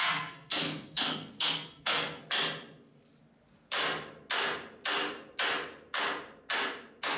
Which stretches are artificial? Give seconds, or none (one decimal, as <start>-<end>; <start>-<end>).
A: 0.0-2.2